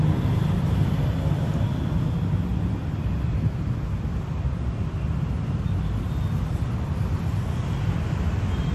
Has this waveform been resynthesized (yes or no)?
no